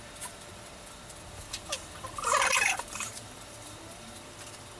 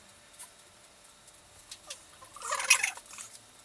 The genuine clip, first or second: second